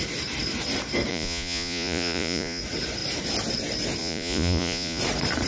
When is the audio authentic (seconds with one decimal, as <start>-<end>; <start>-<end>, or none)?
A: 0.0-1.1; 2.6-4.0; 5.0-5.5